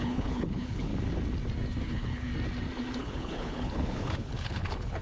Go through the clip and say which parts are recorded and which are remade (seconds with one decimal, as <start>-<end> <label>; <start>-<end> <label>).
0.0-0.9 remade; 0.9-1.8 recorded; 1.8-2.3 remade; 2.3-3.0 recorded; 3.0-5.0 remade